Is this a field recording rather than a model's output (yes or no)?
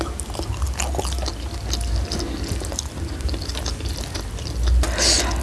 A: yes